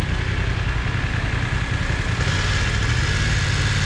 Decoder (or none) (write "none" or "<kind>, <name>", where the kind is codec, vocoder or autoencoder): none